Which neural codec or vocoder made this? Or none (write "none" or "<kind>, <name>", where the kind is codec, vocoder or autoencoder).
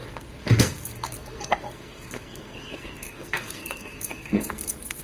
codec, SNAC